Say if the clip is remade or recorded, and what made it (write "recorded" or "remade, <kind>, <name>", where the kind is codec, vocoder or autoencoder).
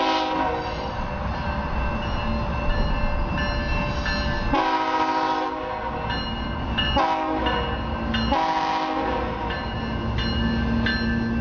recorded